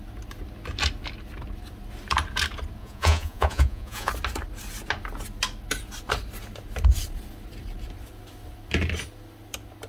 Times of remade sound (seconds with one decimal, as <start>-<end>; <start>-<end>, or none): 2.8-4.1